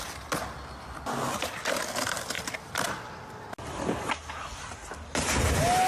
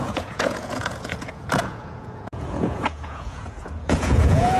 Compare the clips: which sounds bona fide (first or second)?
first